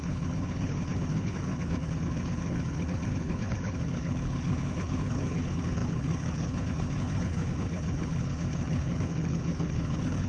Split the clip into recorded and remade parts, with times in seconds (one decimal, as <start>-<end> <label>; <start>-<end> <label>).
0.0-10.3 remade